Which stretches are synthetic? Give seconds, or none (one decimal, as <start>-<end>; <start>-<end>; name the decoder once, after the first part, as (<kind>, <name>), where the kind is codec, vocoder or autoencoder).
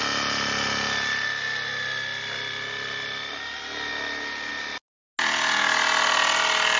none